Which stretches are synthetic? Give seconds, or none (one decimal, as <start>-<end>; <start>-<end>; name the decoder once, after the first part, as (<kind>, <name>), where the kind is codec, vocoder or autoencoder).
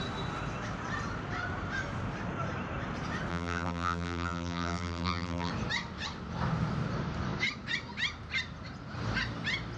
3.3-5.5 (vocoder, BigVGAN v2)